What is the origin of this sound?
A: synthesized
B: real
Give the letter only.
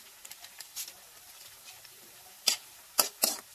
A